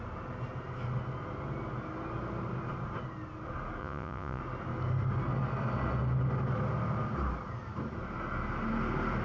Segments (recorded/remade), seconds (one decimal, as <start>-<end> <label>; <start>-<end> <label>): 0.0-3.8 recorded; 3.8-4.4 remade; 4.4-9.2 recorded